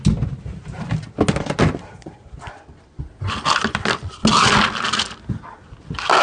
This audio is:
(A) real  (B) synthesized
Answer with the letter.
A